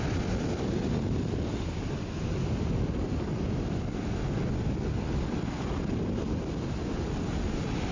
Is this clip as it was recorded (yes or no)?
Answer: yes